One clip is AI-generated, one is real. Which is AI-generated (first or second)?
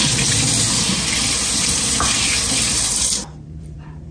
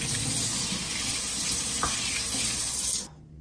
first